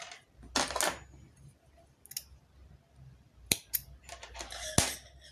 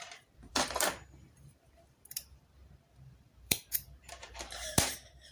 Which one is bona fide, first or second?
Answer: first